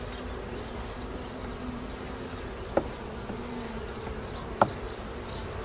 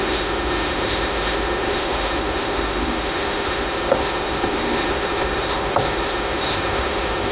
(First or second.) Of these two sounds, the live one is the first